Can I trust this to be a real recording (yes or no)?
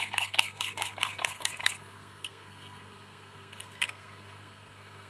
no